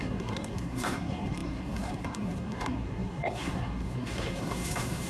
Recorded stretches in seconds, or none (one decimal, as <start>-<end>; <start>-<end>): none

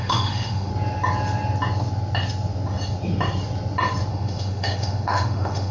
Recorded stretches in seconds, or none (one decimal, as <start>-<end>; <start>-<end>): 0.7-4.1

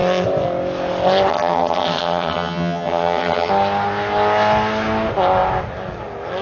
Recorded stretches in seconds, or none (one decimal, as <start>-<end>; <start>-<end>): 0.0-1.3; 3.5-6.4

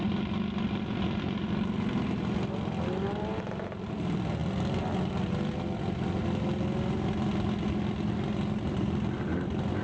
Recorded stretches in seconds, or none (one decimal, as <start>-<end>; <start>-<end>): 0.0-9.8

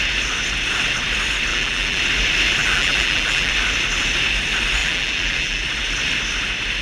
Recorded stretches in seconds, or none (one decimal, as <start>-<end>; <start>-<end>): 0.0-1.5; 2.0-2.6; 3.5-4.8; 5.6-6.8